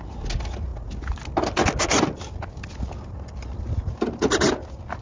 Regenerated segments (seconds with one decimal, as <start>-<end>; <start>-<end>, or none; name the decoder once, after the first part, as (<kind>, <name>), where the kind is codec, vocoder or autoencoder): none